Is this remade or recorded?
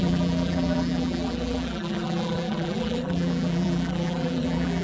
remade